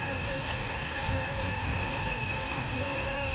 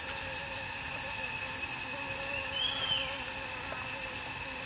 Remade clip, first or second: first